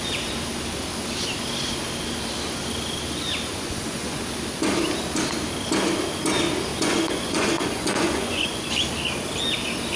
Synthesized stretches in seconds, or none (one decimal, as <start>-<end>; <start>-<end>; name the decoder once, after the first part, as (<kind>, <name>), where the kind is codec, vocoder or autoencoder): 3.5-4.2 (vocoder, Vocos); 6.7-8.7